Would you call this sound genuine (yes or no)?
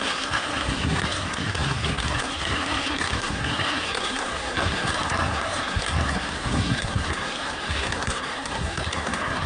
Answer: no